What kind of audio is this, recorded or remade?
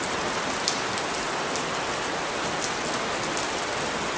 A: recorded